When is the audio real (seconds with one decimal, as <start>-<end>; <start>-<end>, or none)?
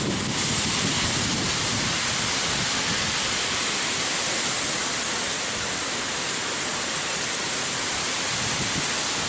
0.0-9.3